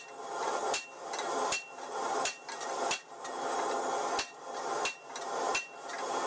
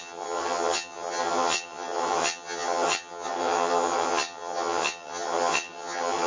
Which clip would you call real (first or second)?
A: first